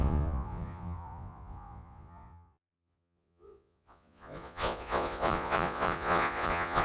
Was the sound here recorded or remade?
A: remade